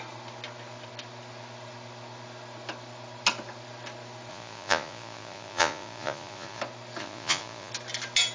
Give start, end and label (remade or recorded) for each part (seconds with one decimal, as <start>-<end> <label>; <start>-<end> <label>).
0.0-4.3 recorded; 4.3-6.6 remade; 6.6-7.0 recorded; 7.0-7.7 remade; 7.7-8.3 recorded